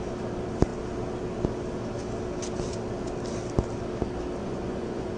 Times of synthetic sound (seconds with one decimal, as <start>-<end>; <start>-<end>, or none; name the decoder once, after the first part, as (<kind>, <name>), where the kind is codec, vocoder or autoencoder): 4.4-5.2 (vocoder, Vocos)